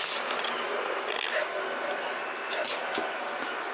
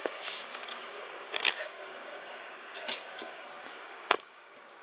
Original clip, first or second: first